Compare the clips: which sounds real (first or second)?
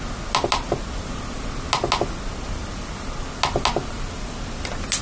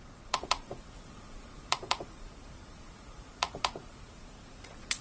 first